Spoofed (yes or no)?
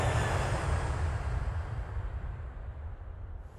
yes